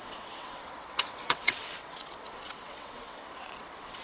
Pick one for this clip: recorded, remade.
remade